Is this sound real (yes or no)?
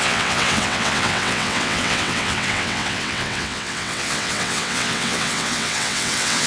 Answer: no